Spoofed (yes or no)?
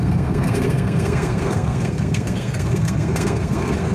yes